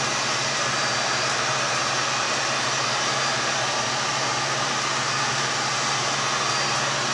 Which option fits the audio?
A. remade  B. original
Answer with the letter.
B